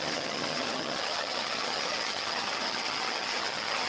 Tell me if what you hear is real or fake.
fake